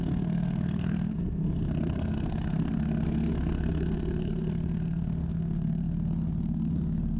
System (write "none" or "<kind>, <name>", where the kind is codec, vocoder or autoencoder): codec, SNAC